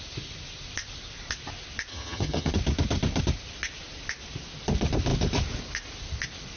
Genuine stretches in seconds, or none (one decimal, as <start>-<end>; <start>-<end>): 0.0-1.9; 2.5-6.6